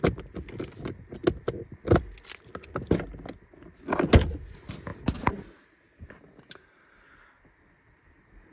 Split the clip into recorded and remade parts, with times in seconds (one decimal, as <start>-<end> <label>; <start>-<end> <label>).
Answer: 0.0-8.5 recorded